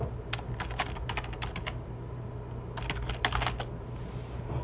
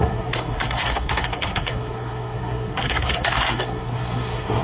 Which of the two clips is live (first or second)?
first